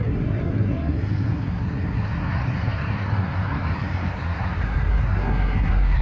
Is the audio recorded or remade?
remade